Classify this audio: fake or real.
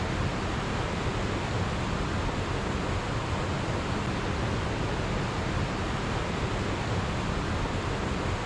real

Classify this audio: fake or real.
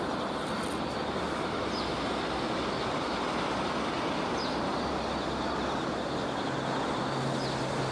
real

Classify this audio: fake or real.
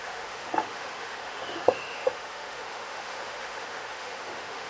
fake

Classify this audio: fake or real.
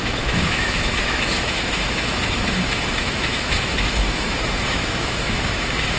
fake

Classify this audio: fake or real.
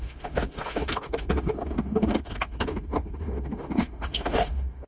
fake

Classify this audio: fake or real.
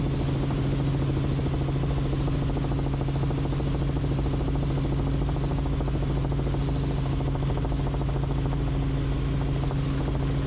real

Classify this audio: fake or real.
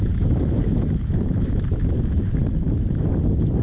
fake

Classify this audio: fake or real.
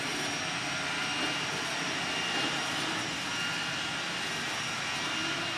real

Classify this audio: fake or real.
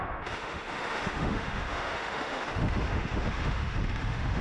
fake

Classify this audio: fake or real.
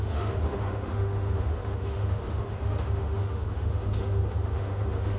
fake